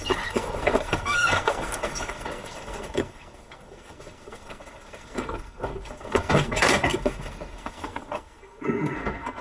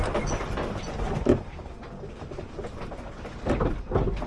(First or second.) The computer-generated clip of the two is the first